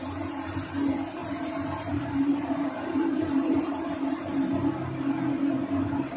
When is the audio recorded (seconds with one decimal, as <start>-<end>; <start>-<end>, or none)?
0.5-1.2; 4.1-6.2